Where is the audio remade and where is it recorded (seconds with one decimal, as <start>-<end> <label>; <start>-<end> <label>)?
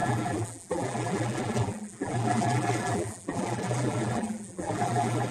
0.0-5.3 remade